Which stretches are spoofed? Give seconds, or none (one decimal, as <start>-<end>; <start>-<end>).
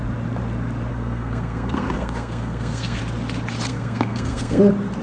0.9-3.0; 3.7-4.6